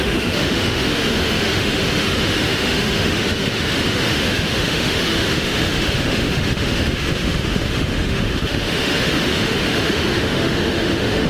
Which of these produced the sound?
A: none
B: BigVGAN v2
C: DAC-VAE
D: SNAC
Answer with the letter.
C